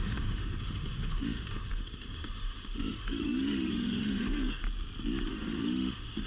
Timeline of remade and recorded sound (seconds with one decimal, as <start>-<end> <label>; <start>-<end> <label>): 0.0-4.6 remade; 4.6-5.3 recorded; 5.3-6.3 remade